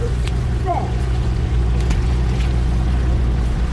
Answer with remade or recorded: remade